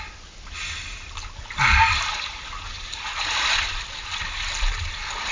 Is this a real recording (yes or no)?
yes